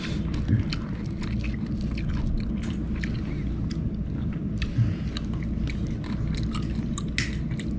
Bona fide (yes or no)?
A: yes